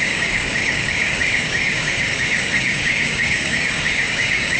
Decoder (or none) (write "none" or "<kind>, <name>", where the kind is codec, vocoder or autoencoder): codec, DAC